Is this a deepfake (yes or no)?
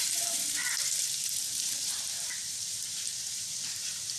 yes